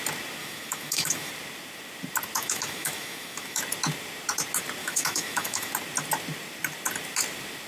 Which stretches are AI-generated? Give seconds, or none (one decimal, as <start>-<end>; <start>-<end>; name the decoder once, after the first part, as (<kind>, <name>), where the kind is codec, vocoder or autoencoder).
0.4-1.3 (autoencoder, DAC-VAE); 2.4-3.6; 4.8-5.7